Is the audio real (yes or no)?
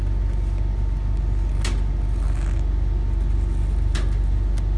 yes